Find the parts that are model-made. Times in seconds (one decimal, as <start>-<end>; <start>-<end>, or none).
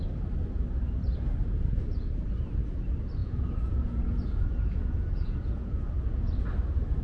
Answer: 3.2-6.3